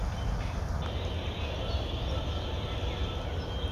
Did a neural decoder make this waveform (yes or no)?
no